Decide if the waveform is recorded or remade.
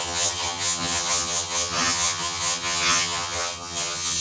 remade